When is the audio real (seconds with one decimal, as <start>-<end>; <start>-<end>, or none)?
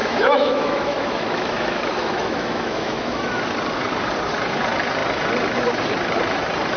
3.4-6.8